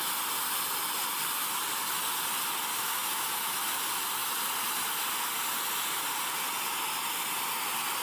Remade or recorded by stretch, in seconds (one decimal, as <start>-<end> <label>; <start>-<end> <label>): 0.0-2.7 recorded; 2.7-3.7 remade; 3.7-8.0 recorded